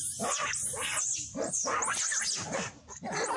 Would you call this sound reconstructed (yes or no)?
no